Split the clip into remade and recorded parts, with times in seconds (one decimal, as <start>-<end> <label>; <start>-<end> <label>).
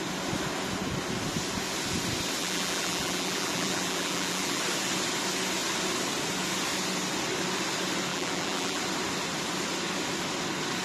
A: 0.0-2.4 recorded; 2.4-4.6 remade; 4.6-8.1 recorded; 8.1-8.8 remade; 8.8-10.8 recorded